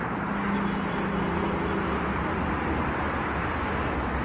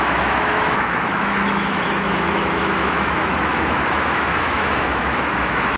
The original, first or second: first